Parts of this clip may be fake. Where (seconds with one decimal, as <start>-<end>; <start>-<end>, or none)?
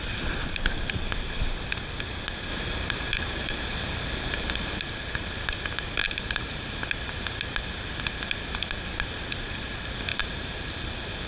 2.5-4.8; 6.0-6.8; 10.1-11.3